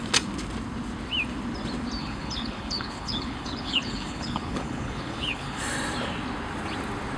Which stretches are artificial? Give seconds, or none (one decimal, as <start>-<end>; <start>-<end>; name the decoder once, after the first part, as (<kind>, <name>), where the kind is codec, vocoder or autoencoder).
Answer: 2.0-5.6 (codec, HILCodec)